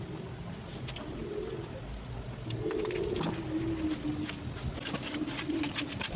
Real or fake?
real